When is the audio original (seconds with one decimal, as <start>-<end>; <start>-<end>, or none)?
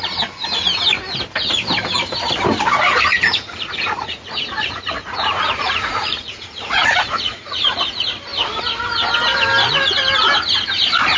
0.0-3.1; 7.8-11.2